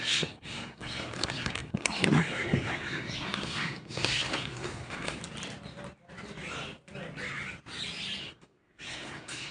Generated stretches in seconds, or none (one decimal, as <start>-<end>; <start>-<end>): 0.0-5.2; 8.2-9.5